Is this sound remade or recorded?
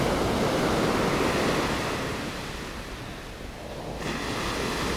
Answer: recorded